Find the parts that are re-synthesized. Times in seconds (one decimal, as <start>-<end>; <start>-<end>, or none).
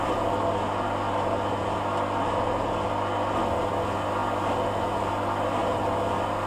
none